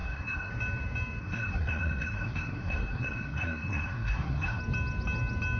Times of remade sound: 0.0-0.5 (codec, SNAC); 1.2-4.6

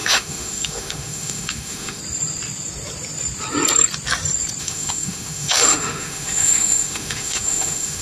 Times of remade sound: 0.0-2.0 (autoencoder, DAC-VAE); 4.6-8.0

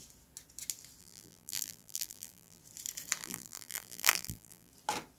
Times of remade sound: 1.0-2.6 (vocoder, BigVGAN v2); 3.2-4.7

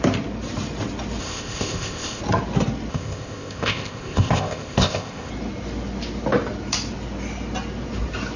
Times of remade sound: 1.2-2.2 (codec, ZipCodec); 2.9-5.3